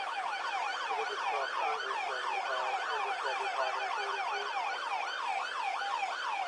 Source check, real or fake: real